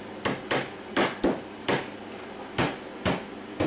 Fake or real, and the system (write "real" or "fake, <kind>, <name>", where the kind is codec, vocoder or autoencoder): real